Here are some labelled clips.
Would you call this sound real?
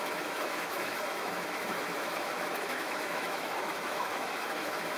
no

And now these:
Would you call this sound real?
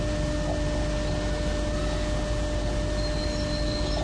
yes